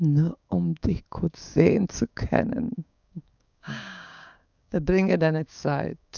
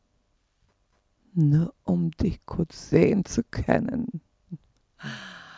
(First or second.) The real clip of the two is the second